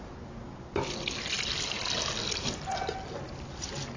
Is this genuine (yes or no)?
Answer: yes